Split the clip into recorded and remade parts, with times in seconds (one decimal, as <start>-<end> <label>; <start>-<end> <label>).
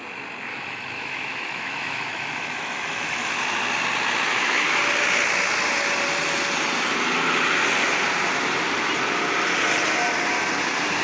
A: 0.0-0.5 recorded; 0.5-3.4 remade; 3.4-4.3 recorded; 4.3-4.8 remade; 4.8-11.0 recorded